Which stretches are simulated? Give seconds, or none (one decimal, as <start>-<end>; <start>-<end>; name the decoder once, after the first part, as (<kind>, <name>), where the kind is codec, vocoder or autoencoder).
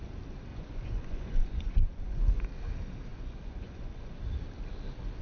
0.5-2.4 (vocoder, Vocos); 3.1-4.1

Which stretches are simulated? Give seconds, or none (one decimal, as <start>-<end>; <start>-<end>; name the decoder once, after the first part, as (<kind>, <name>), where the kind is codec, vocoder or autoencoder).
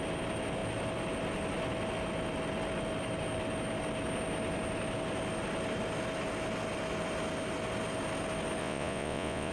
8.6-9.5 (vocoder, Vocos)